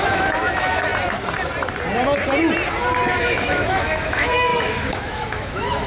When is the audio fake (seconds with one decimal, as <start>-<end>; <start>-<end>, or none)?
0.0-0.9; 3.2-5.9